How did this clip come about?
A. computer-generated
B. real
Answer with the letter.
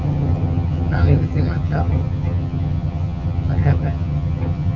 A